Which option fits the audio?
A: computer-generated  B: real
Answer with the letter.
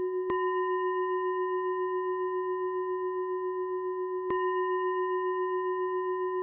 B